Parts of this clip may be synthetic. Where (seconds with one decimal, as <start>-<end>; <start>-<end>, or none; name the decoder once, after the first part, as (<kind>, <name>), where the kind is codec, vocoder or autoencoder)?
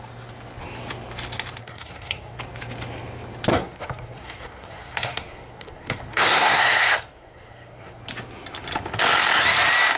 1.6-2.4 (codec, SNAC); 3.5-8.0